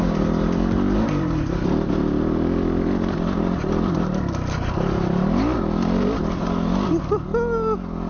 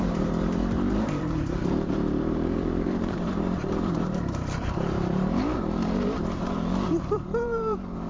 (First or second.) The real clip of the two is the first